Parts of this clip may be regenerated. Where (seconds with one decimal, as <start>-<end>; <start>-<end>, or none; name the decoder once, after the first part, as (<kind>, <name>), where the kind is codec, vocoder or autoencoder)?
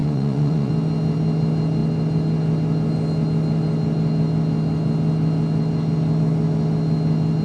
0.0-0.7 (vocoder, Vocos)